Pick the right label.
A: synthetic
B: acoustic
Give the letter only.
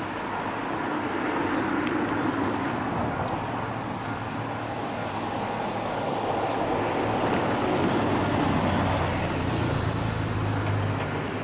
B